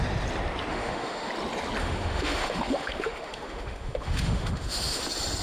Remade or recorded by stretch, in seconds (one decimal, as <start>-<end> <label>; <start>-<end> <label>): 0.0-0.7 recorded; 0.7-1.3 remade; 1.3-1.8 recorded; 1.8-5.0 remade; 5.0-5.4 recorded